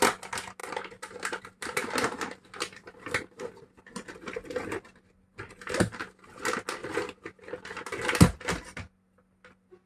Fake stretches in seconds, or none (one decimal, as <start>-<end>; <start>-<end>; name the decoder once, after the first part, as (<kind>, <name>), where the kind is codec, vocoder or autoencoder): 0.6-3.8 (vocoder, BigVGAN v2); 6.8-7.4